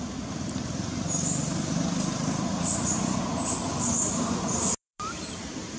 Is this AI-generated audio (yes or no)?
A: yes